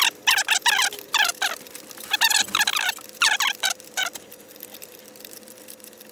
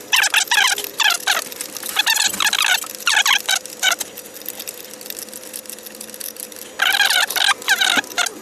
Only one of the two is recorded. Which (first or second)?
second